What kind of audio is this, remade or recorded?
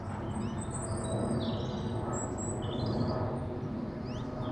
recorded